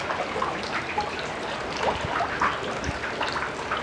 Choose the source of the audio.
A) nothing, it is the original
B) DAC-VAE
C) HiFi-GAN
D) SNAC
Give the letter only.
A